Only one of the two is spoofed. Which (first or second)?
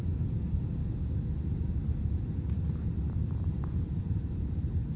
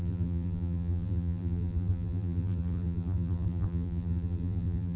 second